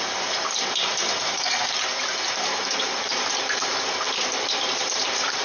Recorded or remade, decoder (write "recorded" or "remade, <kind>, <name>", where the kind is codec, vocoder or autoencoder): remade, vocoder, BigVGAN v2